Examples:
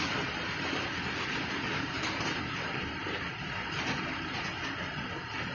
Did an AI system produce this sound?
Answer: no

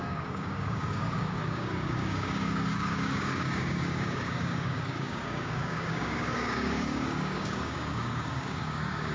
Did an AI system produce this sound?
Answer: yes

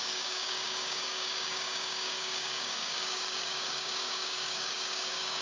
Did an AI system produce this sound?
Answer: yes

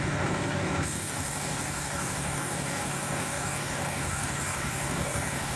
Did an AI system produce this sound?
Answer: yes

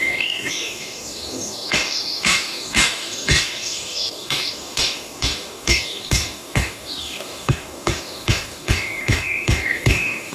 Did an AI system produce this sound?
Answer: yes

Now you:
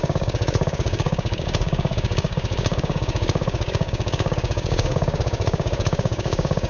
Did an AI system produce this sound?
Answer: yes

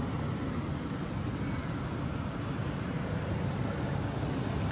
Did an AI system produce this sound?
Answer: no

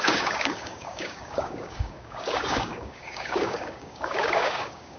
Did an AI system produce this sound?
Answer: yes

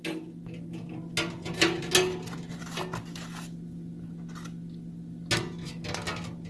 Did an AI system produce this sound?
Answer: no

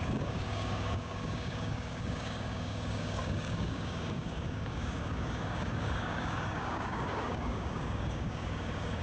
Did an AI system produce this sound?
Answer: yes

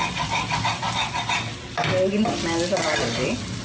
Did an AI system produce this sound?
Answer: no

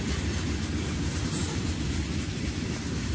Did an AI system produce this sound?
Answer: no